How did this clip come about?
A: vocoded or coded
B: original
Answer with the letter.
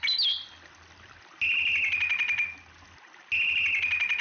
B